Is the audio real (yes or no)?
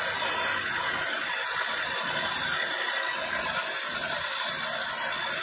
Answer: yes